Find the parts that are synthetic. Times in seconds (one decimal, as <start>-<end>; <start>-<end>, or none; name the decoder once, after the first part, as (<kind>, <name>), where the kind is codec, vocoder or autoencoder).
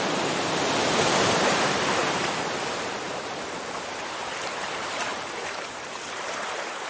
0.0-2.0 (vocoder, BigVGAN v2); 2.7-6.9